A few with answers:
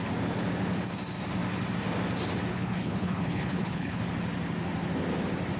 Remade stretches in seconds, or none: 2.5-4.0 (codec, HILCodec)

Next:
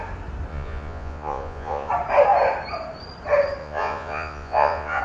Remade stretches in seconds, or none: 0.5-1.9 (vocoder, Vocos); 3.6-5.0

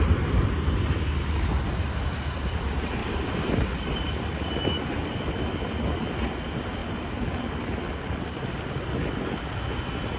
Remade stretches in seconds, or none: 3.0-5.8 (vocoder, BigVGAN v2); 6.8-9.5

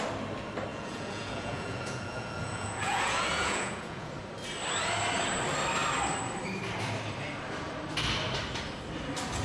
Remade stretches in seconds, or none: 0.7-4.1 (vocoder, Vocos)